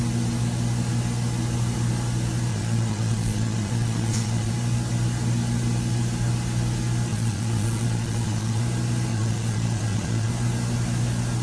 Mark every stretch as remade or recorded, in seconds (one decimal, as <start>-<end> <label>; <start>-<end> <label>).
0.0-2.5 recorded; 2.5-4.5 remade; 4.5-7.1 recorded; 7.1-8.6 remade; 8.6-9.1 recorded; 9.1-10.3 remade; 10.3-11.4 recorded